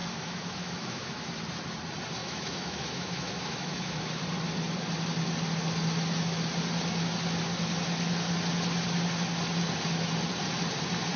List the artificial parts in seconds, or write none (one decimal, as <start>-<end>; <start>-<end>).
0.0-1.2; 2.2-4.2